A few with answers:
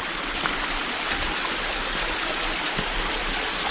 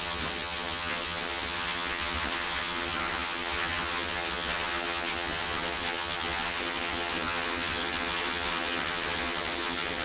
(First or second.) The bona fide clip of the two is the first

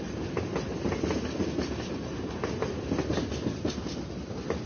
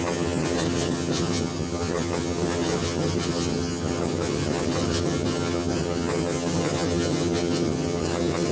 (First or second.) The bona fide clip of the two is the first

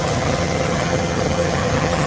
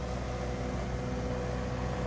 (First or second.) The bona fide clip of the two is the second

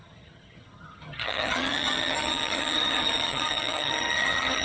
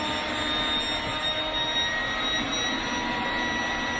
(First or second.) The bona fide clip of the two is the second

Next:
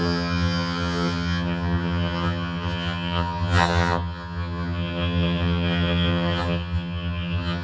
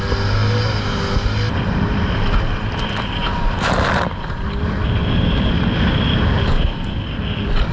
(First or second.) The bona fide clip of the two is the second